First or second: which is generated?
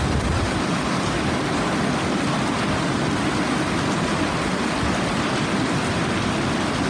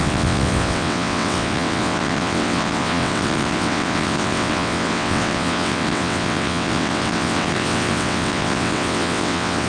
second